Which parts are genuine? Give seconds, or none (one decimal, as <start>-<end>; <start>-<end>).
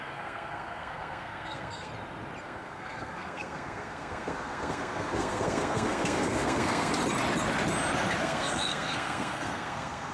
1.9-2.4; 6.9-8.2